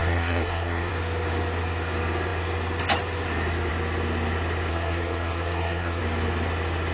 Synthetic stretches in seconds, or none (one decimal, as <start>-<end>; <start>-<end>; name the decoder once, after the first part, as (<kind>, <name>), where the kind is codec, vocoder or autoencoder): 0.0-0.9 (codec, SNAC); 4.7-6.0